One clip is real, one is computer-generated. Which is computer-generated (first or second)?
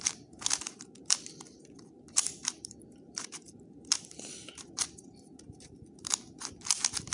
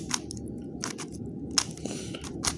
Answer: first